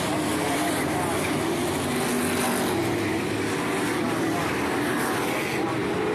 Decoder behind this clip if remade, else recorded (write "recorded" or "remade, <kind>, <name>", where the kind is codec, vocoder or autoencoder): recorded